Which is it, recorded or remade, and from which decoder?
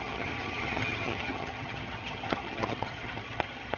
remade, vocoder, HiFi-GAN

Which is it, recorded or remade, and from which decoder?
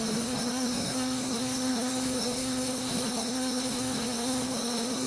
remade, codec, SNAC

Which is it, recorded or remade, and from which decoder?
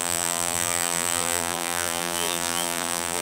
remade, vocoder, BigVGAN v2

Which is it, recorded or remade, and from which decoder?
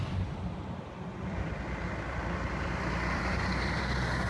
remade, vocoder, BigVGAN v2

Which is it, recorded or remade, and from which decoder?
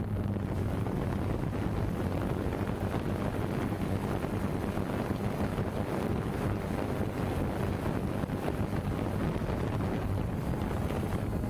recorded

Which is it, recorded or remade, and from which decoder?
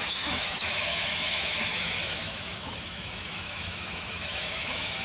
remade, autoencoder, DAC-VAE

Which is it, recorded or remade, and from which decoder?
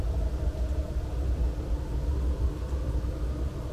recorded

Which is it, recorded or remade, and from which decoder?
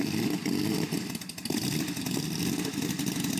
recorded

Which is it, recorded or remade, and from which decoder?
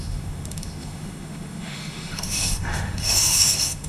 remade, autoencoder, DAC-VAE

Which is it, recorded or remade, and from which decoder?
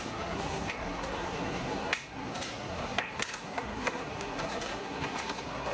remade, codec, SNAC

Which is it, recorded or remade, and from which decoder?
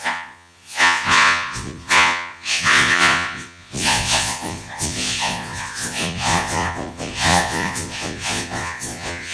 remade, vocoder, Vocos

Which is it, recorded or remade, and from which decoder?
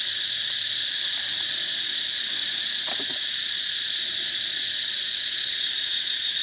recorded